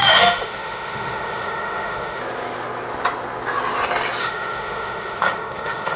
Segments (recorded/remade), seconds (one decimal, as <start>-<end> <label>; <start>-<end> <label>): 0.0-2.2 remade; 2.2-4.2 recorded; 4.2-6.0 remade